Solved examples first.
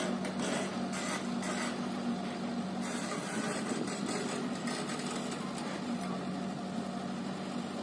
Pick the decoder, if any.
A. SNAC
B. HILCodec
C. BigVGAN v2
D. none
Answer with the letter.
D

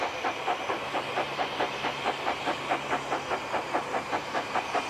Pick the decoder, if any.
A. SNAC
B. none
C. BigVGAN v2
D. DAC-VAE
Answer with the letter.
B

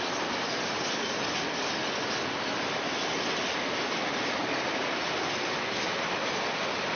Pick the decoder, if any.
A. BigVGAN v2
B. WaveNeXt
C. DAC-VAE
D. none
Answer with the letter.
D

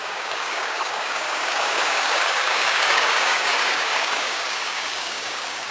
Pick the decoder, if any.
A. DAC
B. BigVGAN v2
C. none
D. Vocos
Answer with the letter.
A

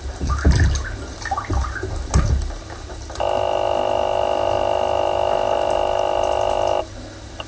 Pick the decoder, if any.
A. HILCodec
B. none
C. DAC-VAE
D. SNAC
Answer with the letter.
B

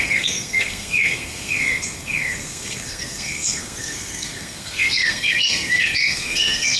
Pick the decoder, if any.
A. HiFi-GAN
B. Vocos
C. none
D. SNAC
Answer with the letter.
D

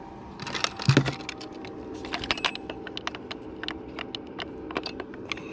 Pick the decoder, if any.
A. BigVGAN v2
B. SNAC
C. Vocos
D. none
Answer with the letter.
D